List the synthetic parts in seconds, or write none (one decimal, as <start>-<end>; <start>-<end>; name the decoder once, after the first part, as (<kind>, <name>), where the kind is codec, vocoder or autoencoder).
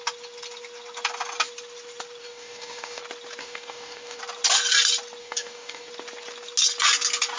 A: 2.2-3.0 (codec, DAC); 3.4-4.2; 5.2-5.9